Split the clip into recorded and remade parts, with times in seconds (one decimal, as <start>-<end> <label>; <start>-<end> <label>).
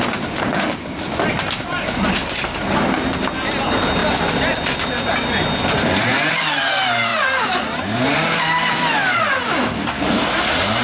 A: 0.0-10.8 recorded